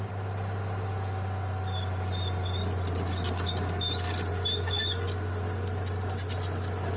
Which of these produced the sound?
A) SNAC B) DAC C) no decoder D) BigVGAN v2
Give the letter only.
C